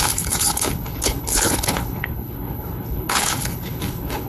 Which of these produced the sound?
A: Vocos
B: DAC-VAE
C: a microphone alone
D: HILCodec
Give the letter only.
D